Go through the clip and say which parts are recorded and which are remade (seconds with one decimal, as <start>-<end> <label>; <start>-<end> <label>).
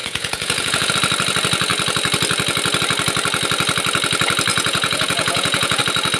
0.0-0.9 remade; 0.9-4.5 recorded; 4.5-5.8 remade; 5.8-6.2 recorded